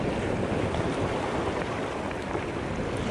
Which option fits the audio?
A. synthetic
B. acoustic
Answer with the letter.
B